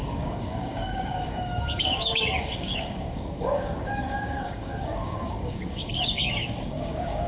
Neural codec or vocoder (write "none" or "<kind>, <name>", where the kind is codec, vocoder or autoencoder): codec, DAC